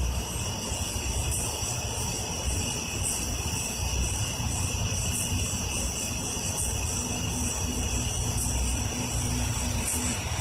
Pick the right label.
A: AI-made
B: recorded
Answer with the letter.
B